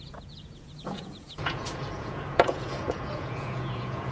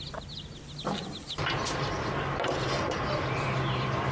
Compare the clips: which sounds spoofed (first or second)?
first